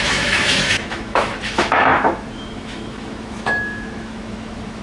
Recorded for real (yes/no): no